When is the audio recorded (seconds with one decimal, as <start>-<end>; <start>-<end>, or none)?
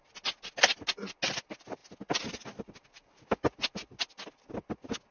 0.0-5.1